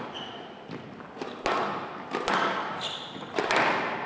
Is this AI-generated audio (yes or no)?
no